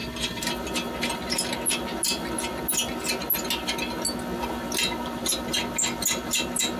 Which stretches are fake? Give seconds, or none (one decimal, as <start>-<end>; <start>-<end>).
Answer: none